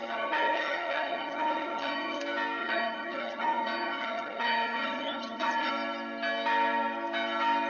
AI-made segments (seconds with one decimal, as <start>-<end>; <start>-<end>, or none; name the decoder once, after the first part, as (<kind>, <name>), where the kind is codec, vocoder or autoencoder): 0.0-2.2 (vocoder, HiFi-GAN); 2.6-5.7